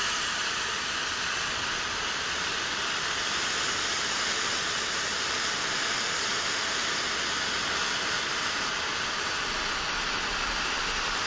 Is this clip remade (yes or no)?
no